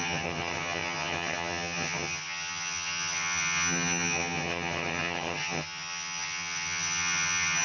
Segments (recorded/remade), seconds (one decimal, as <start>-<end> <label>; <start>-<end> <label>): 0.0-7.6 remade